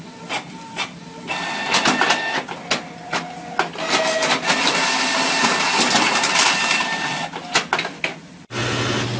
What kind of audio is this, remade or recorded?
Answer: recorded